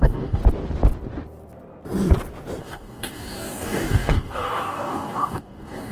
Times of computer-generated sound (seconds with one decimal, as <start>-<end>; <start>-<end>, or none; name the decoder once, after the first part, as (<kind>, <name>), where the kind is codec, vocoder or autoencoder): 0.0-0.4 (codec, DAC); 2.6-5.9